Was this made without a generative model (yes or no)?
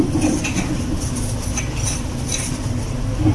yes